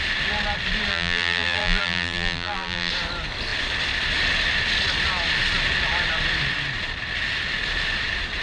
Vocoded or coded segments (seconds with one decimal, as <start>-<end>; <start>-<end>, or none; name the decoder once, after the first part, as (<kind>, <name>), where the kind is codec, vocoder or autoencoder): 0.9-2.9 (vocoder, BigVGAN v2)